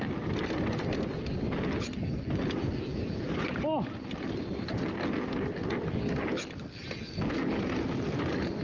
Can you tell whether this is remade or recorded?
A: recorded